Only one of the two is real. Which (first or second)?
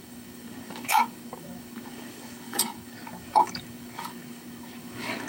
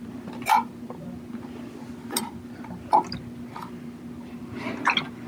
second